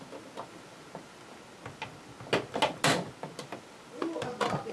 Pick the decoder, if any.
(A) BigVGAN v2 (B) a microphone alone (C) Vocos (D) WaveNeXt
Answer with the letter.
B